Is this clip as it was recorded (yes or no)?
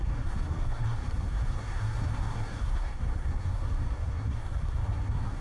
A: no